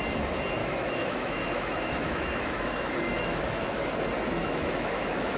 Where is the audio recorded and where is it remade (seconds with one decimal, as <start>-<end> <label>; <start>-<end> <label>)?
0.0-0.6 recorded; 0.6-3.8 remade; 3.8-4.4 recorded; 4.4-5.4 remade